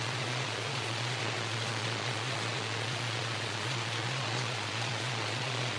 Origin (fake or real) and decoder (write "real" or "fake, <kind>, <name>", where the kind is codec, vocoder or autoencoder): fake, vocoder, Vocos